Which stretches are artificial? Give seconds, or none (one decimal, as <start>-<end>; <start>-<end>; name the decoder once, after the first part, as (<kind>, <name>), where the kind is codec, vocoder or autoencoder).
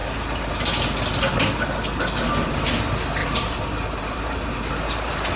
3.2-5.4 (vocoder, BigVGAN v2)